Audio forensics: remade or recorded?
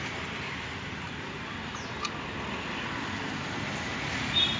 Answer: recorded